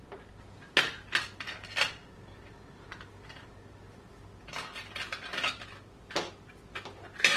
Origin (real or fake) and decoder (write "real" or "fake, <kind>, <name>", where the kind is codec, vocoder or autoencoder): real